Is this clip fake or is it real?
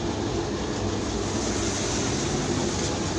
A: real